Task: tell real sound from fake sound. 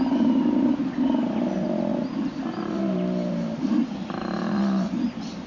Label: real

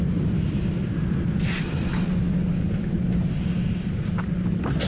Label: real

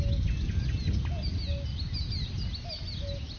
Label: real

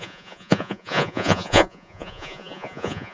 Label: fake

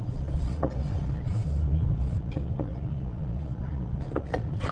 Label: fake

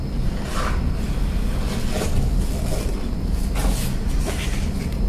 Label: real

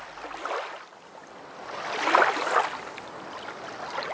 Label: real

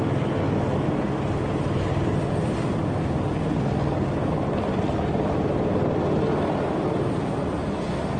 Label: real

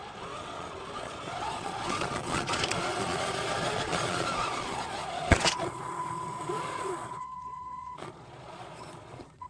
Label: fake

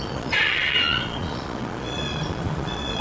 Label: fake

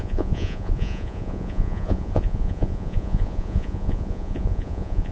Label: fake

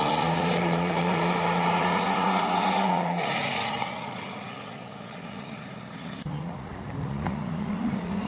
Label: fake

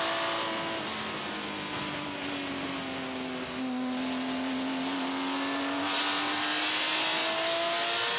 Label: real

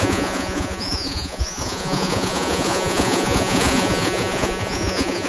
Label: fake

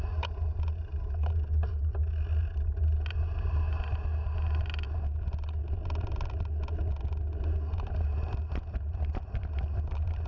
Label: real